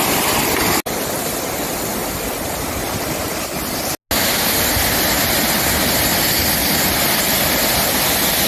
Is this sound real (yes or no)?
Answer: yes